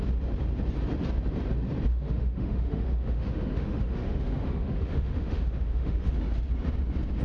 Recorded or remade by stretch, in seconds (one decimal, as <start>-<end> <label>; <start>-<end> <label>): 0.0-1.9 recorded; 1.9-6.2 remade; 6.2-7.2 recorded